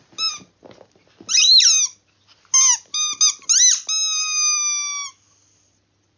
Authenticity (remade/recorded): recorded